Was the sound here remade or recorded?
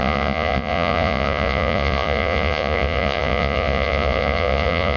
remade